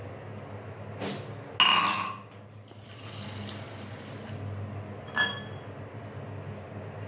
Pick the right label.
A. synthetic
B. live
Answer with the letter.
B